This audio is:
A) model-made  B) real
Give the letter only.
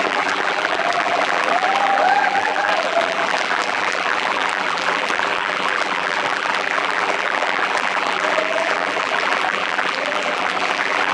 A